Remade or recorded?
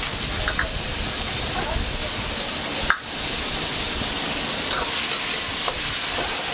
recorded